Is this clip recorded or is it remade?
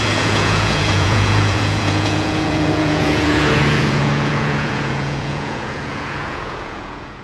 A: remade